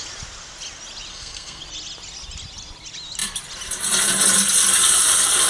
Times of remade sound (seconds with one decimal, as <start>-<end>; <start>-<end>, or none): 1.1-1.6